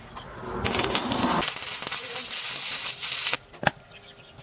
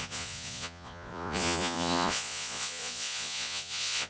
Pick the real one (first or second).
first